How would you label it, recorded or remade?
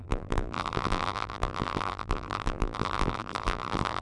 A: remade